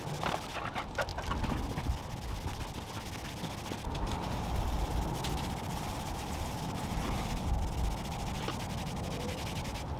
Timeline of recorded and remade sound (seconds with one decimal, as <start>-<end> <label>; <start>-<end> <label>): 0.0-10.0 recorded